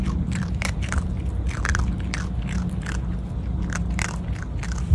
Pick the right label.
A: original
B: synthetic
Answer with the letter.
A